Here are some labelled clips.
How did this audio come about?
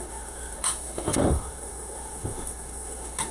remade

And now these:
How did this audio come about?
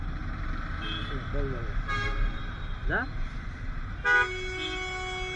recorded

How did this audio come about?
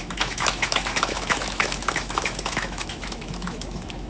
remade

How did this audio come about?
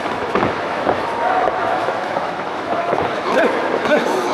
remade